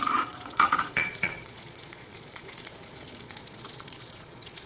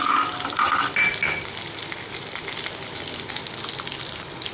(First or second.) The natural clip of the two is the second